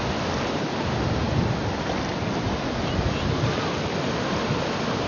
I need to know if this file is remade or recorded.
recorded